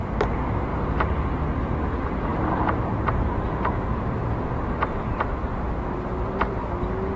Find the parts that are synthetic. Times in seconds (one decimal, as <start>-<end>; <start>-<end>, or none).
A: 0.7-1.4; 2.3-6.6